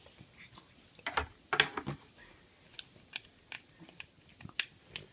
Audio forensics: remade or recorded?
recorded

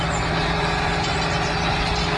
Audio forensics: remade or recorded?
recorded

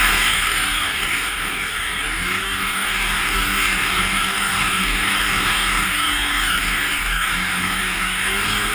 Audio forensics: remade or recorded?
remade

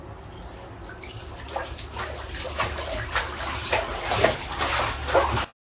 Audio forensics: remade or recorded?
recorded